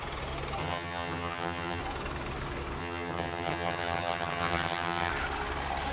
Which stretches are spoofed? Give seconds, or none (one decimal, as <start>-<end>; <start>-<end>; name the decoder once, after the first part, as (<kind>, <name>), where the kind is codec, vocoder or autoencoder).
0.6-1.8 (vocoder, HiFi-GAN); 2.8-5.1